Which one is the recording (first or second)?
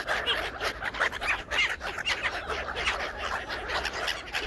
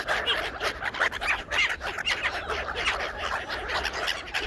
first